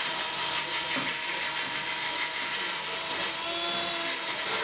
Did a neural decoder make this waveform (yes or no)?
no